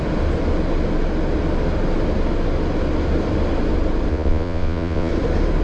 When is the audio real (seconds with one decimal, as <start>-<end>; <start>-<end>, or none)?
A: 0.0-4.1; 5.1-5.6